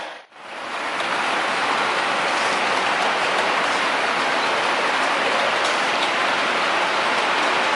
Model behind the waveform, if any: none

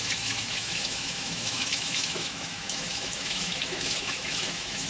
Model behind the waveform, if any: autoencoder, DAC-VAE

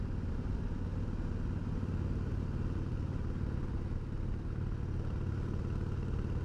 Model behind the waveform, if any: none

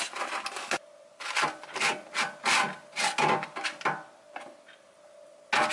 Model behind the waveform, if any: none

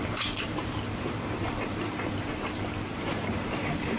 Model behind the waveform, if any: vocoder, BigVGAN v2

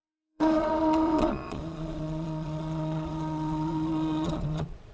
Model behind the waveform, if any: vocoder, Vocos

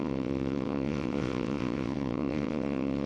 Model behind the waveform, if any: vocoder, WaveNeXt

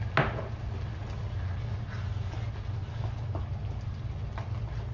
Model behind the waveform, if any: none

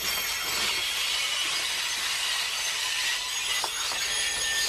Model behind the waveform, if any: none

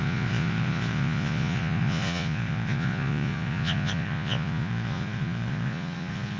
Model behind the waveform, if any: vocoder, Vocos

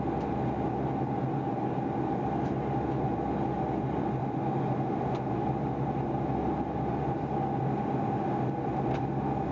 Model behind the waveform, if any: none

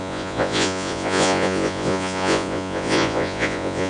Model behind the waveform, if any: vocoder, Vocos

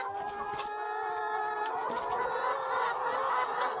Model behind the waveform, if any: none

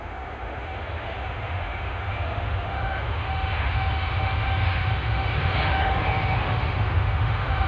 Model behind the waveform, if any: autoencoder, DAC-VAE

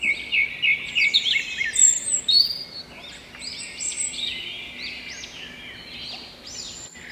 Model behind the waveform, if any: none